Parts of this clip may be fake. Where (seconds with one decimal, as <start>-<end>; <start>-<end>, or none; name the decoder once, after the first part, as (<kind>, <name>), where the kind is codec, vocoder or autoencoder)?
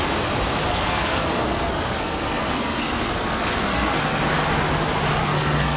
0.7-4.2 (codec, SNAC); 5.2-5.8